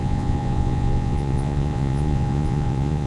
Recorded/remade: remade